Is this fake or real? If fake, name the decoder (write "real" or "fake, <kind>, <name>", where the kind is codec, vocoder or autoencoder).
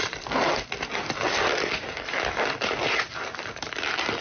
real